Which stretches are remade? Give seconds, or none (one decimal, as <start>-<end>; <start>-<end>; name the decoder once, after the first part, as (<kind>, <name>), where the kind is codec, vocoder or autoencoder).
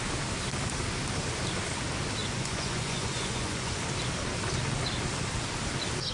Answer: 2.2-3.8 (vocoder, Vocos)